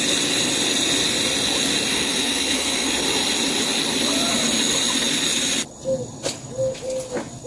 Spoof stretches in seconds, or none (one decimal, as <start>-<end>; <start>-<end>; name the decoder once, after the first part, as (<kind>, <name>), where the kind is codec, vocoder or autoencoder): 1.9-2.9 (codec, SNAC)